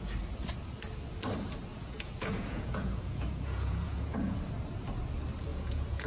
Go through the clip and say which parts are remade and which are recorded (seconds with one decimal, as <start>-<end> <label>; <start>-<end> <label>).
0.0-1.7 recorded; 1.7-4.4 remade; 4.4-5.5 recorded; 5.5-6.1 remade